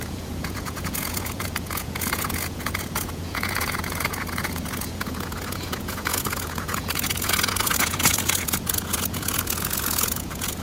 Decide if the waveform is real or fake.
fake